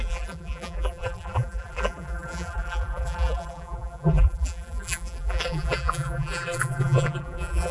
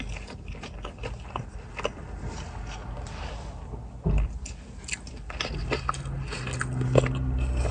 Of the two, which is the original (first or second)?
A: second